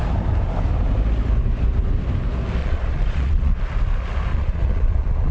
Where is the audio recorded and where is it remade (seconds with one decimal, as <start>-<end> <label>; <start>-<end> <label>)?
0.0-2.6 recorded; 2.6-3.6 remade; 3.6-4.3 recorded; 4.3-5.3 remade